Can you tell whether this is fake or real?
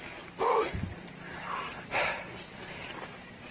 real